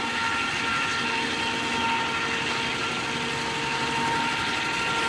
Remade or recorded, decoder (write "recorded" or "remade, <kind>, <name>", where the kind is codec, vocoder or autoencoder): recorded